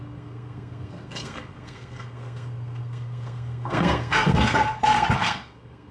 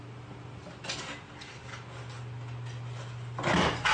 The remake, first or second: first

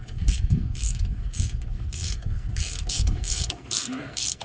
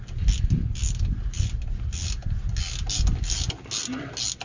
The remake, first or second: first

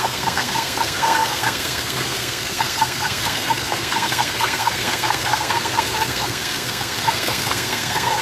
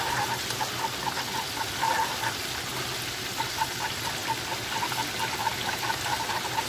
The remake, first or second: first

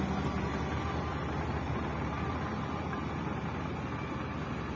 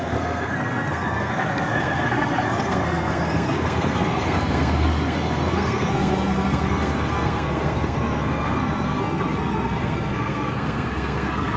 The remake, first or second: second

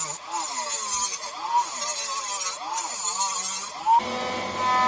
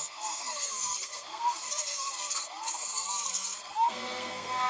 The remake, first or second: second